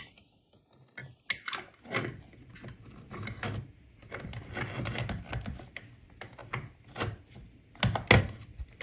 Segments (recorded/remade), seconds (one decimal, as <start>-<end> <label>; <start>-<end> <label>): 0.0-8.8 recorded